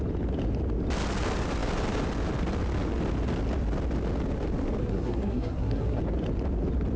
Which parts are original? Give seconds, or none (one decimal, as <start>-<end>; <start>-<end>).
0.0-4.8; 6.0-7.0

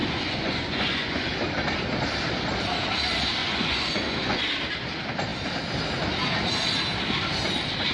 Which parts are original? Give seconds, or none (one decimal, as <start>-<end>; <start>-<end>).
1.3-3.4; 4.4-7.9

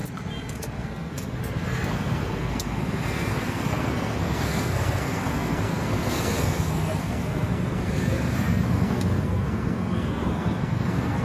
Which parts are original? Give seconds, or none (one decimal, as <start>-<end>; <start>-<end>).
0.0-0.5